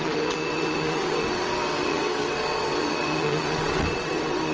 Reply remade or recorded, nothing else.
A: remade